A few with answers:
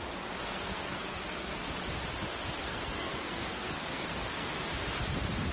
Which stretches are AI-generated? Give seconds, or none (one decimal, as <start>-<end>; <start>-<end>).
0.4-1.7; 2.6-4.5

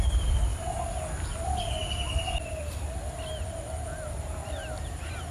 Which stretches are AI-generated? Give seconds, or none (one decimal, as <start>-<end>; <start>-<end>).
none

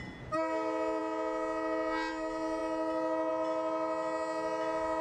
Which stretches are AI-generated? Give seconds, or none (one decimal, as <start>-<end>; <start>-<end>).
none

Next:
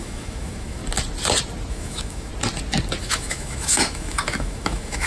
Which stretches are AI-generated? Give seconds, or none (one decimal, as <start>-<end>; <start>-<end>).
0.0-0.8; 1.7-2.3; 3.0-5.1

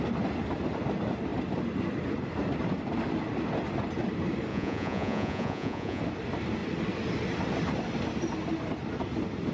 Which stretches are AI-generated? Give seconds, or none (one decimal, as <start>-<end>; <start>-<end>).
4.5-6.0

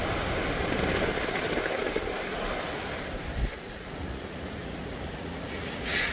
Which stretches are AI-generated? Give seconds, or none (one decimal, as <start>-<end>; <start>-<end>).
3.7-6.1

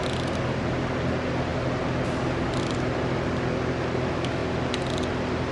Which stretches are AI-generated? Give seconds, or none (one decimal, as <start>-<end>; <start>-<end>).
none

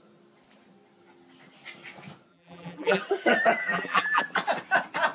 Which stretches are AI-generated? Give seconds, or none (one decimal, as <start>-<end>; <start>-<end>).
2.3-3.0; 3.6-4.2